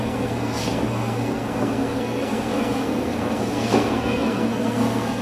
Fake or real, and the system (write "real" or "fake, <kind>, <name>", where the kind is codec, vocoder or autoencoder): fake, codec, SNAC